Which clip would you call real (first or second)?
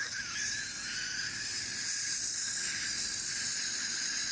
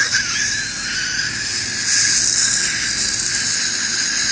second